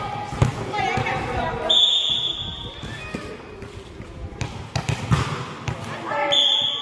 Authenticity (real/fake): real